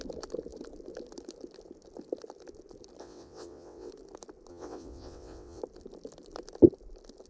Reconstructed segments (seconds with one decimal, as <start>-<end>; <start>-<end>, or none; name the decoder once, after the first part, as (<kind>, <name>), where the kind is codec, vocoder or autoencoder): 3.0-3.9 (vocoder, WaveNeXt); 4.5-5.6